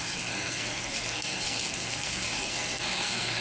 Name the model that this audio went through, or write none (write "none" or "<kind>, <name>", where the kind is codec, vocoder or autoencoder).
codec, SNAC